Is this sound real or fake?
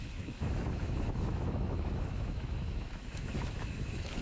fake